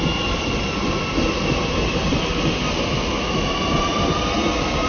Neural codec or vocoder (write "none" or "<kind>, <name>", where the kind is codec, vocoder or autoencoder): none